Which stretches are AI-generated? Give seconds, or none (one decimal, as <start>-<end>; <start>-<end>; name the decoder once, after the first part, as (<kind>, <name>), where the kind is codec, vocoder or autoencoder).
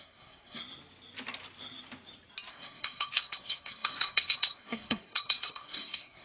0.0-0.6 (codec, SNAC); 2.5-6.2